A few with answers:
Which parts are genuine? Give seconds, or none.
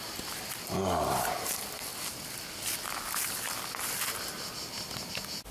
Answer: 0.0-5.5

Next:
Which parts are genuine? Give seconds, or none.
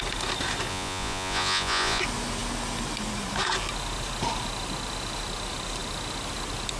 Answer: 0.0-0.7; 2.0-6.8